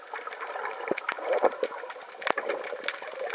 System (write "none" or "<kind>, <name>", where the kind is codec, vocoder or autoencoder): none